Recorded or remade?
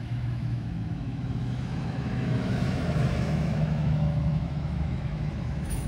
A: remade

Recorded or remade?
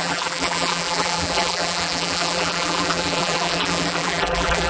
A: remade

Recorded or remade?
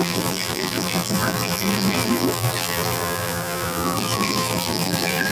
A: remade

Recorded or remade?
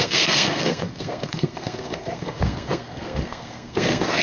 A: remade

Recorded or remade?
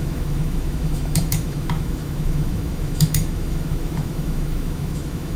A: remade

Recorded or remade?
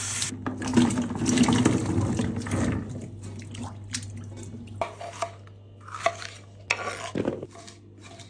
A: recorded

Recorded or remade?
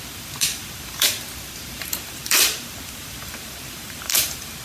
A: remade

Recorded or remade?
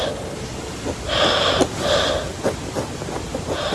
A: recorded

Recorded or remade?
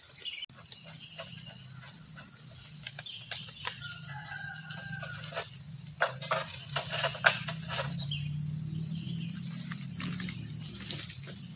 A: recorded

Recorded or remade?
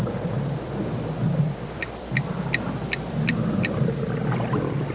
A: remade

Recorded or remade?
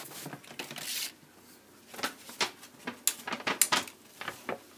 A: recorded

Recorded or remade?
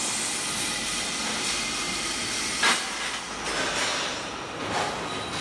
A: recorded